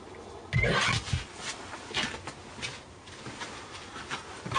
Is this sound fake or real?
real